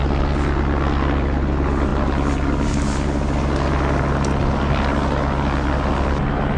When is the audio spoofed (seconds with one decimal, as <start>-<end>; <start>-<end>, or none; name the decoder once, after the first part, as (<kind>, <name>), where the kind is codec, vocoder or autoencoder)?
none